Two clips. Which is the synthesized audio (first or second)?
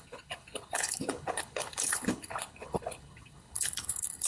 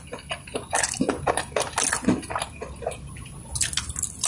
first